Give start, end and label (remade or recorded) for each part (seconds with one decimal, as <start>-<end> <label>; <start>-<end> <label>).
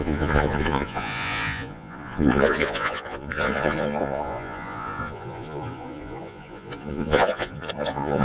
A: 0.0-8.2 remade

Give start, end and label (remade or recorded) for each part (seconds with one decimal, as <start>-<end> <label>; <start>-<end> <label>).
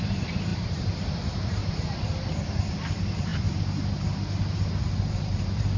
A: 0.0-1.6 remade; 1.6-2.7 recorded; 2.7-3.3 remade; 3.3-4.8 recorded; 4.8-5.8 remade